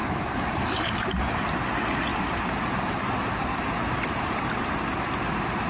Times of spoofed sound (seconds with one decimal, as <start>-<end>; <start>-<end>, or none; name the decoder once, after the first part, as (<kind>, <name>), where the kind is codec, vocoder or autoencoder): 0.0-1.4 (vocoder, BigVGAN v2); 2.1-4.4